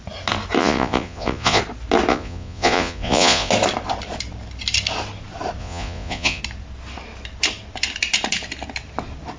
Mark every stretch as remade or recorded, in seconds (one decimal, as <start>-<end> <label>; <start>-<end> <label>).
0.0-0.6 recorded; 0.6-1.6 remade; 1.6-2.1 recorded; 2.1-3.5 remade; 3.5-5.6 recorded; 5.6-6.4 remade; 6.4-9.4 recorded